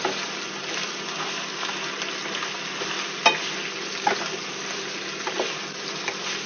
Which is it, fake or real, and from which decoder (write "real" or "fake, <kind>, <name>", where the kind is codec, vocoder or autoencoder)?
real